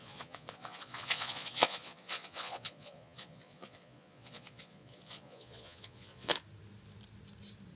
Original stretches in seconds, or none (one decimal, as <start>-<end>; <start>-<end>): 6.3-7.8